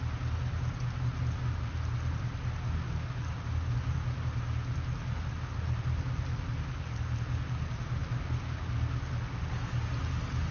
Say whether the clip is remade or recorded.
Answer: recorded